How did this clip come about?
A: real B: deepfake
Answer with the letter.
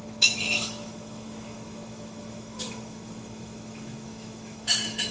B